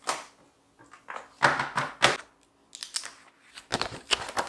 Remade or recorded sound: recorded